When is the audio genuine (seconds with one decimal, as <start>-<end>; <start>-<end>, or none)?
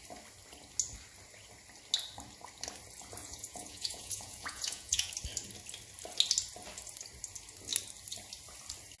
0.0-3.2; 5.1-9.0